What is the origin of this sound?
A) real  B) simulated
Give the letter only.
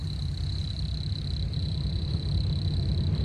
B